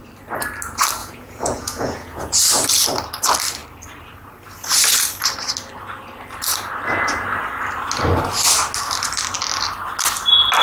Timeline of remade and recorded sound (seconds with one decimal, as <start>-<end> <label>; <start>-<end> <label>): 0.0-1.0 recorded; 1.0-2.4 remade; 2.4-10.6 recorded